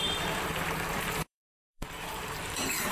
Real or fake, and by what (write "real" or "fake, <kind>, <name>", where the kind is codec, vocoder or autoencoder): fake, vocoder, BigVGAN v2